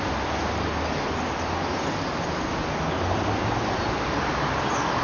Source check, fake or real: real